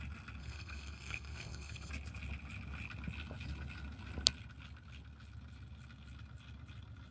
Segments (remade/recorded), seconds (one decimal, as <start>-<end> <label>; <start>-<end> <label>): 0.0-0.4 recorded; 0.4-1.9 remade; 1.9-7.1 recorded